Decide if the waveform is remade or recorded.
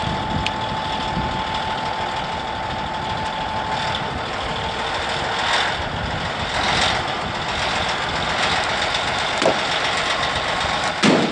recorded